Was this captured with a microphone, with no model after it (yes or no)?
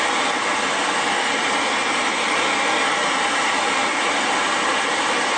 yes